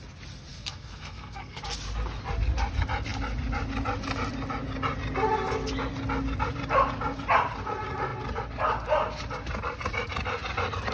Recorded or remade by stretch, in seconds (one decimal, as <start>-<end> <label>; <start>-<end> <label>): 0.0-0.5 recorded; 0.5-1.6 remade; 1.6-10.9 recorded